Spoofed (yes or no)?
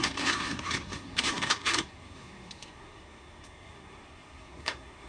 yes